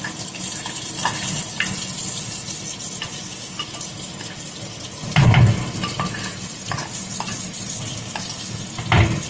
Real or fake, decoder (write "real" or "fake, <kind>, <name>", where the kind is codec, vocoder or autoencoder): real